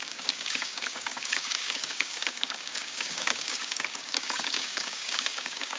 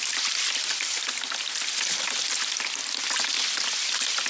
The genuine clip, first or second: second